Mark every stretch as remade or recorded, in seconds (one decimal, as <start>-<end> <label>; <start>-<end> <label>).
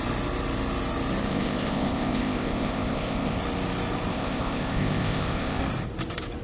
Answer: 0.0-1.3 recorded; 1.3-3.4 remade; 3.4-4.1 recorded; 4.1-5.6 remade; 5.6-6.4 recorded